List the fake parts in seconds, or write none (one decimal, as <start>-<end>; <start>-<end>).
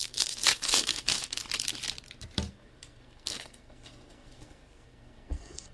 0.0-1.4; 2.5-5.7